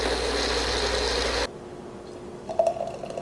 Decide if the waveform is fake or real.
real